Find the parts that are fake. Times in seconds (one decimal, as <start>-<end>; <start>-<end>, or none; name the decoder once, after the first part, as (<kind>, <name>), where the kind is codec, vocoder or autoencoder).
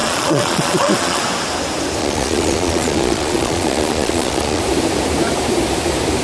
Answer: 0.0-1.2 (vocoder, Vocos); 2.0-4.6